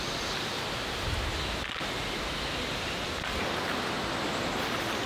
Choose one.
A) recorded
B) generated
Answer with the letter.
A